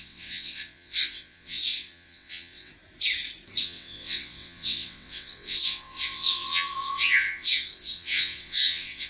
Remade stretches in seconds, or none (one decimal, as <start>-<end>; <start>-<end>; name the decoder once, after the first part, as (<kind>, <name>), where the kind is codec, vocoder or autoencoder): 0.0-2.7 (vocoder, WaveNeXt); 3.6-9.1

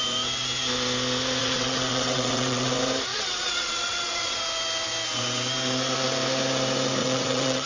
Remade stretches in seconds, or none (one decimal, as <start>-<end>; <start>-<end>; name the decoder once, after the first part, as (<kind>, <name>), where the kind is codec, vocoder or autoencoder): 1.4-2.7 (vocoder, WaveNeXt); 3.1-4.4; 7.0-7.7

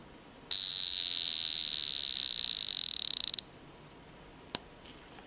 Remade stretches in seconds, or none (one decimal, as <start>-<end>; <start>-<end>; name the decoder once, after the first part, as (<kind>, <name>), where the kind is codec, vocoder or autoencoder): none

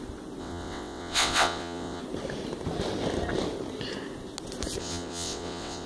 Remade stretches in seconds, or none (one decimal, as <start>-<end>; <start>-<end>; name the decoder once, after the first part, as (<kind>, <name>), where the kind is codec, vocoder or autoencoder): 0.4-2.0 (vocoder, WaveNeXt); 4.8-5.9

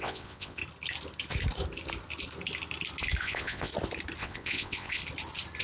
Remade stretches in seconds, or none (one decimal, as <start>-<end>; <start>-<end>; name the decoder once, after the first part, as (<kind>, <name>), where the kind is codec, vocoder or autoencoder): 0.0-0.6 (vocoder, WaveNeXt); 3.2-3.7; 4.2-5.0